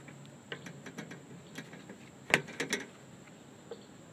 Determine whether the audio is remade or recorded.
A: recorded